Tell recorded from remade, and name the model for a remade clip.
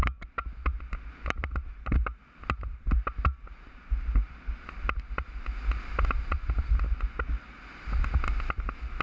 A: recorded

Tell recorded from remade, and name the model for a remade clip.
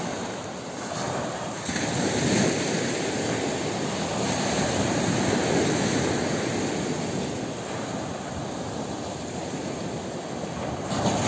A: recorded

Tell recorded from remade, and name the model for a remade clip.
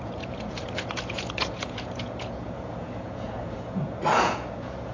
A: remade, vocoder, Vocos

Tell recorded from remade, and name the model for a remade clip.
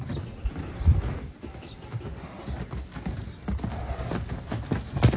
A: recorded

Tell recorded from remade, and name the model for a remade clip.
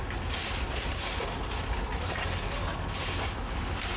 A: recorded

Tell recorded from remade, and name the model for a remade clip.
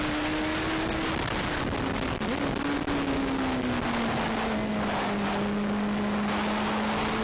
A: recorded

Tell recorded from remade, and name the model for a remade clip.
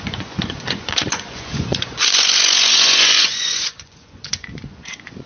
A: remade, vocoder, Vocos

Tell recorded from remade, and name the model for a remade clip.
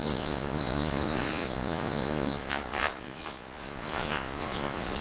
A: remade, vocoder, Vocos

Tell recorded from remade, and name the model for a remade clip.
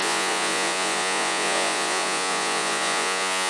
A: remade, vocoder, Vocos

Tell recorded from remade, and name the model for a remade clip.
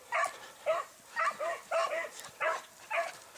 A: recorded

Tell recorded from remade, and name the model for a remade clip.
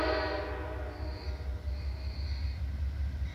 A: recorded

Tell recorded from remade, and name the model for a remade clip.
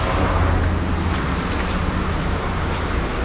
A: recorded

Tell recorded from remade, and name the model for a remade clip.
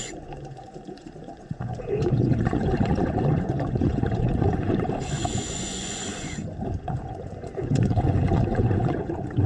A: remade, vocoder, Vocos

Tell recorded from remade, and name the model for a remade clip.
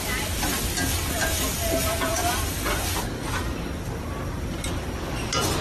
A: recorded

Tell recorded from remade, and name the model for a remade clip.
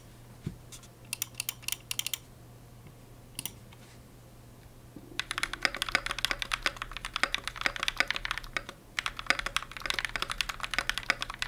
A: recorded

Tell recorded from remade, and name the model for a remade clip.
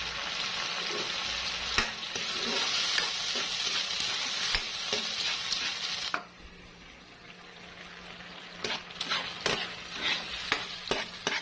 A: recorded